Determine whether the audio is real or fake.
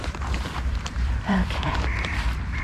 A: fake